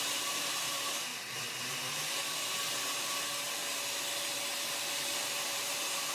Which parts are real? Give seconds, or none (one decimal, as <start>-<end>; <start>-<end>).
1.1-2.8; 3.6-4.9